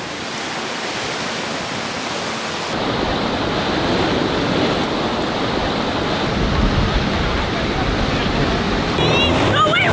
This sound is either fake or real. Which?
real